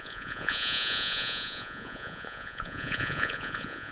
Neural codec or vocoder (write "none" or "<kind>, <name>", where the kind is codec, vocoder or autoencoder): vocoder, Vocos